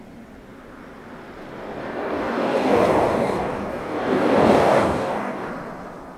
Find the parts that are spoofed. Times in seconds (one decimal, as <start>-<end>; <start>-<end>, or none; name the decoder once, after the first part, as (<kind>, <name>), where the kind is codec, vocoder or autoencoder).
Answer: 1.8-5.5 (codec, DAC)